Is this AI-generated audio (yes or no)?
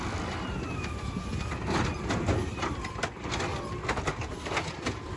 no